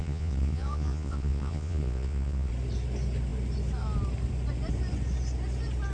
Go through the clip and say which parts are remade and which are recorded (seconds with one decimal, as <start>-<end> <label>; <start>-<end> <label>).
0.0-2.5 remade; 2.5-5.9 recorded